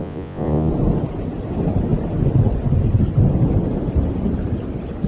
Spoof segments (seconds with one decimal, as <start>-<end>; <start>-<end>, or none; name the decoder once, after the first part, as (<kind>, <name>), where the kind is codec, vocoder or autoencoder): 0.0-0.7 (vocoder, Vocos)